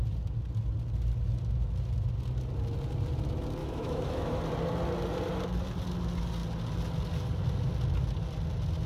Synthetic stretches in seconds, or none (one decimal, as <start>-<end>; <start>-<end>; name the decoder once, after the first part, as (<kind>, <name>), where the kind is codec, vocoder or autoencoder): 3.6-4.4 (autoencoder, DAC-VAE)